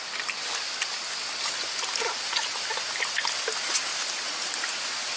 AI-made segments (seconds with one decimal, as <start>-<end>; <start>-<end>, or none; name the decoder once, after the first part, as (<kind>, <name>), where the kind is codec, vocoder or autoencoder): none